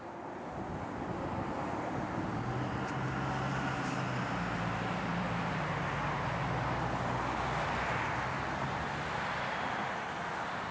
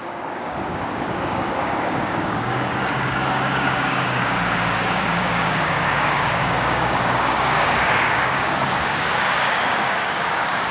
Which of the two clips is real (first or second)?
first